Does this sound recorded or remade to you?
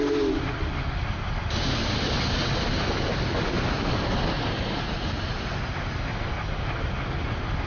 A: recorded